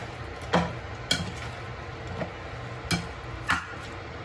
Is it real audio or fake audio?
real